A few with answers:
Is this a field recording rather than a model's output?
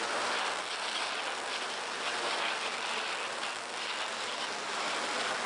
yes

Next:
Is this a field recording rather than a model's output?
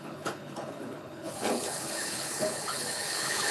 no